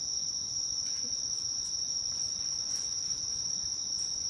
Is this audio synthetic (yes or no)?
yes